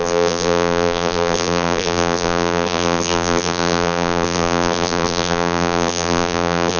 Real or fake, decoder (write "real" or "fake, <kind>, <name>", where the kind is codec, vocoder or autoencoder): fake, vocoder, BigVGAN v2